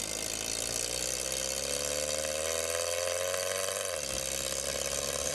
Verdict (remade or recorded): recorded